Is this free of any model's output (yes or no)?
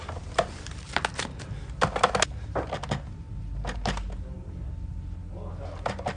yes